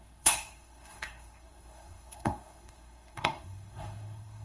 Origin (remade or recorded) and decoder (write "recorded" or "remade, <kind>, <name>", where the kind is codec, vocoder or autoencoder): remade, codec, SNAC